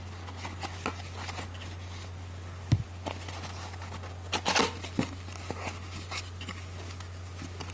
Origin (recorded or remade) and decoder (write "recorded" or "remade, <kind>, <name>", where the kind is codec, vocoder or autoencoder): recorded